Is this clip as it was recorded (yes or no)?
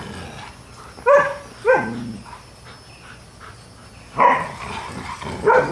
yes